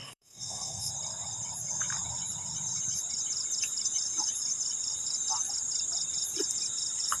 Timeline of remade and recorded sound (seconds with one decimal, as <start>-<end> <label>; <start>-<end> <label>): 0.0-0.9 remade; 0.9-7.2 recorded